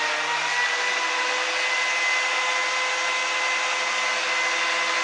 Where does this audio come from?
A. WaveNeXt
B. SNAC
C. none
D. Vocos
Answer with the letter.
C